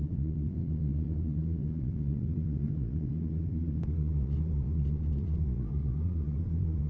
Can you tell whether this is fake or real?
fake